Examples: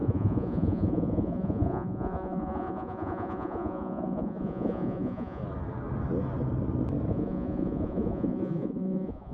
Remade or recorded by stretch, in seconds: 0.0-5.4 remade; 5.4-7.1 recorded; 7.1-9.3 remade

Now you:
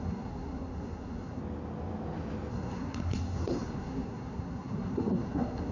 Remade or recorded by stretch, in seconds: 0.0-1.4 remade; 1.4-2.5 recorded; 2.5-5.7 remade